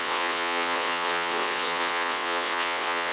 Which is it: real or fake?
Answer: fake